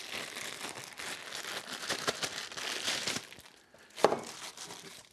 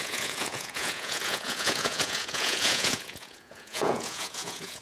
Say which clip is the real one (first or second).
first